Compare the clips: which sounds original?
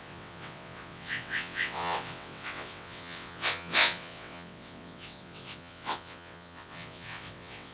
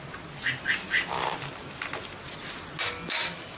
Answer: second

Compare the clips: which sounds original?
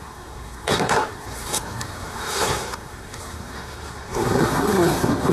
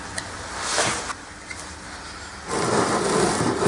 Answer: second